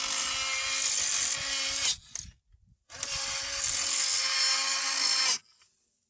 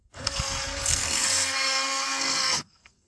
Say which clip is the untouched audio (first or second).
first